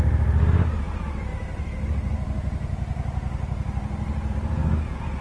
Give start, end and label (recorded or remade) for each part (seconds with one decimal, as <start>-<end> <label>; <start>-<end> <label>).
0.0-5.2 recorded